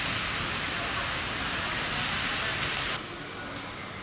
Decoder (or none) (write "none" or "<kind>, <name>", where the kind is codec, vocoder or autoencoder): none